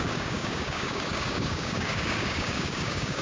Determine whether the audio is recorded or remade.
remade